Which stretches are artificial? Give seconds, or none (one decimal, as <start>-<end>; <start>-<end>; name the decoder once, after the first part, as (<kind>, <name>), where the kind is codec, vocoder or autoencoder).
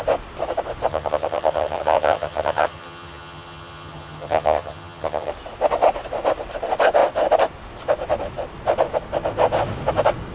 0.9-5.3 (vocoder, HiFi-GAN)